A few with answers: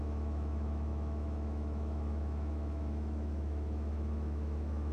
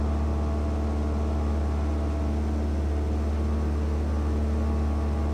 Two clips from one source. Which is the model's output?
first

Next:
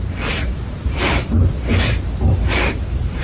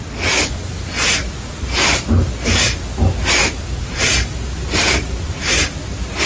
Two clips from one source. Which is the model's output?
first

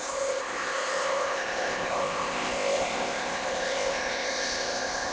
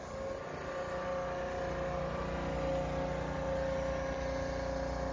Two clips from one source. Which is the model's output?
first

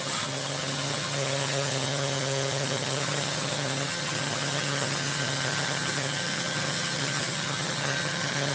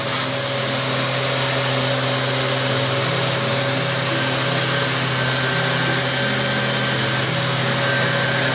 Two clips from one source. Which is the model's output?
first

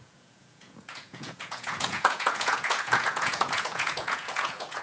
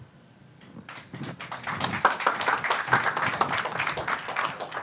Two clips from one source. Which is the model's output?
first